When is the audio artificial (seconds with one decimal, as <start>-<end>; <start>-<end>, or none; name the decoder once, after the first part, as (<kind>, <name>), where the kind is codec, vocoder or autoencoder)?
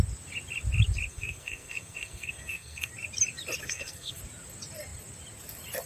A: 1.1-2.9 (codec, SNAC); 3.6-4.2